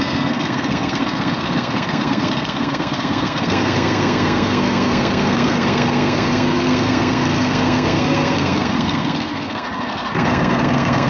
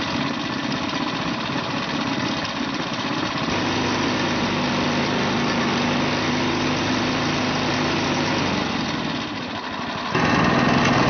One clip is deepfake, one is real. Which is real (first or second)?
second